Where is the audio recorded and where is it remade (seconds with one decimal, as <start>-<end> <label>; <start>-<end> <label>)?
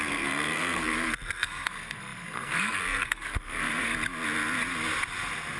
0.0-3.9 remade; 3.9-5.6 recorded